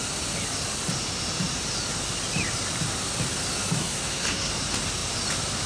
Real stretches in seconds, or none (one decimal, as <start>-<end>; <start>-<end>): 0.0-3.8; 4.5-5.7